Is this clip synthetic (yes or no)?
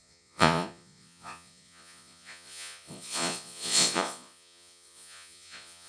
yes